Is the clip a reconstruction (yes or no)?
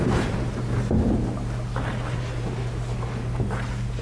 no